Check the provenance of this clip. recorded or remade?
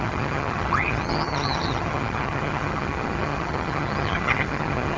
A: remade